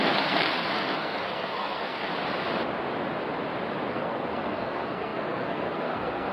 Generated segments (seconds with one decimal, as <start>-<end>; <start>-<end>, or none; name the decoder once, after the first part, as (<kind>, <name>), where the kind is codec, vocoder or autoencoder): 0.0-2.1 (codec, SNAC); 3.9-6.3